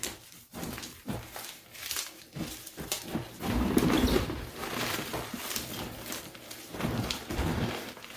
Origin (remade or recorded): remade